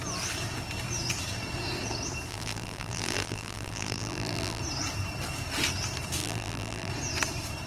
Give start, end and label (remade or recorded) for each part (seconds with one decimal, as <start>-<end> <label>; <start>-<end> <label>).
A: 0.0-2.3 recorded; 2.3-4.6 remade; 4.6-6.2 recorded; 6.2-6.9 remade; 6.9-7.7 recorded